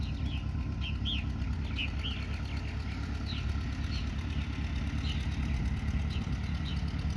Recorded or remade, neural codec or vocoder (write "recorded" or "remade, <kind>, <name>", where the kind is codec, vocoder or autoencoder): recorded